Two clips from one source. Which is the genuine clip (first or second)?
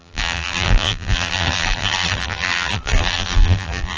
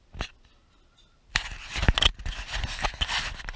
second